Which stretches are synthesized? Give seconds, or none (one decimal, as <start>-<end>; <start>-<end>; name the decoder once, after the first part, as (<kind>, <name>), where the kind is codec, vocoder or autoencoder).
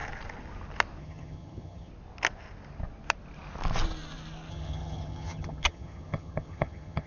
1.0-1.9 (vocoder, HiFi-GAN); 4.5-7.1